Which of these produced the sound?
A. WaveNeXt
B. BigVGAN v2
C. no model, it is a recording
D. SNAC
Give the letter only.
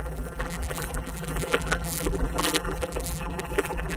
B